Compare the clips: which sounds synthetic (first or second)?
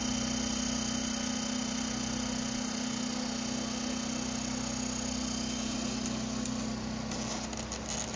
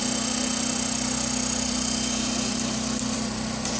second